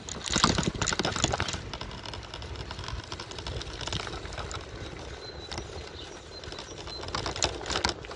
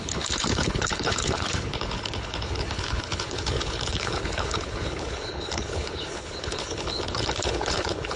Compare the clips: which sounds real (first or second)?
first